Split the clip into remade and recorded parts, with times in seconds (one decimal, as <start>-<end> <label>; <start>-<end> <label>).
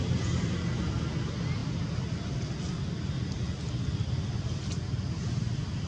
0.0-5.9 recorded